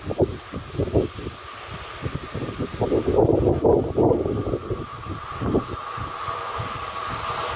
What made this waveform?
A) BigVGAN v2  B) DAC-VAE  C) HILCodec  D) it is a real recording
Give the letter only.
D